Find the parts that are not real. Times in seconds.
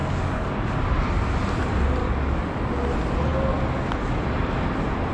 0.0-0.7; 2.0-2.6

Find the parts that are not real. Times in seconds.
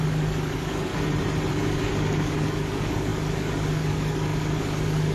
0.0-0.9; 1.5-5.1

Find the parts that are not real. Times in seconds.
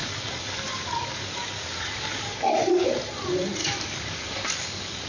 0.0-2.9; 3.6-5.1